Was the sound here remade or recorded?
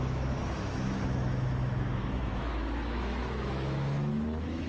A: remade